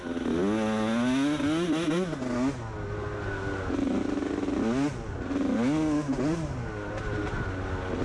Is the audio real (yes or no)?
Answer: yes